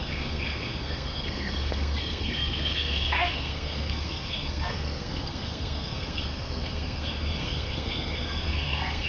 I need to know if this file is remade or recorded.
remade